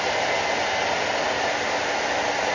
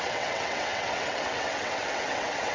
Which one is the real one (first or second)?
first